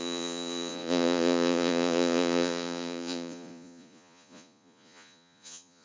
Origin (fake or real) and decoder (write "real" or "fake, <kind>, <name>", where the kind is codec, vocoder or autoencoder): fake, vocoder, Vocos